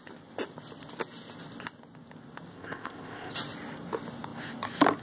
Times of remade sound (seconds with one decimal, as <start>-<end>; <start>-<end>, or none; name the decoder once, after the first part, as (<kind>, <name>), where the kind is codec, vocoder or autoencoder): 2.5-3.3 (codec, ZipCodec)